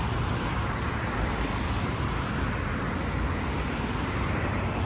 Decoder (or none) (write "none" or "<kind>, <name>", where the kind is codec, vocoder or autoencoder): none